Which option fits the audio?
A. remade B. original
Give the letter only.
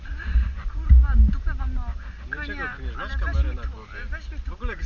B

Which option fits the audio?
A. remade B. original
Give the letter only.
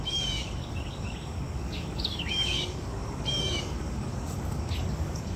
A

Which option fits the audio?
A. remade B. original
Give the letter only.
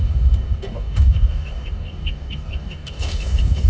A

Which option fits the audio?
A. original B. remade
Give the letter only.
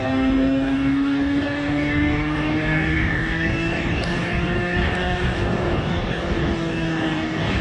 B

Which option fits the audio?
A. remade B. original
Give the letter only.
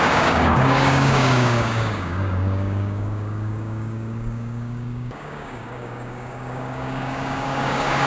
A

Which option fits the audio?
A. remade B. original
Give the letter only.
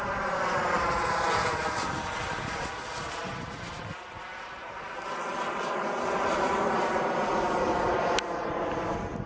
B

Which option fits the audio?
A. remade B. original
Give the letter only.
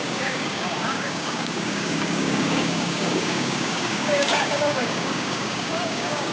A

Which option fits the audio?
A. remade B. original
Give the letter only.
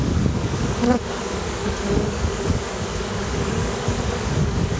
A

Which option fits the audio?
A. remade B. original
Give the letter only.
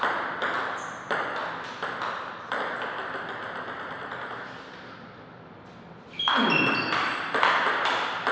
B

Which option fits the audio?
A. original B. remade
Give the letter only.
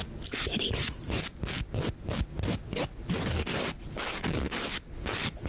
A